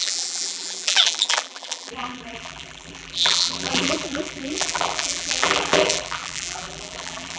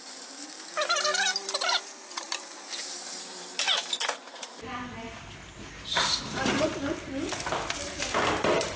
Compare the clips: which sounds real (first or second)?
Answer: second